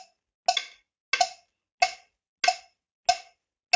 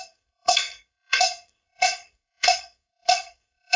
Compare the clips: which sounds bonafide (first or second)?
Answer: first